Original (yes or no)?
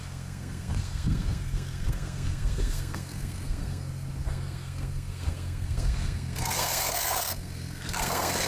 no